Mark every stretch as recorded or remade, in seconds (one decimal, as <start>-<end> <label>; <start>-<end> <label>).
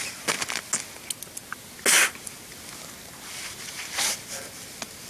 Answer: 0.0-5.1 recorded